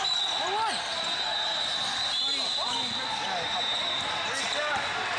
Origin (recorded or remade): recorded